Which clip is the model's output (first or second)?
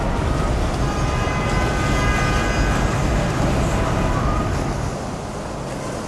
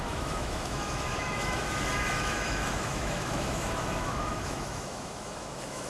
second